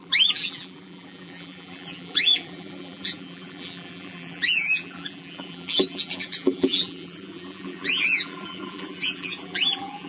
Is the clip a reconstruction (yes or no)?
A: yes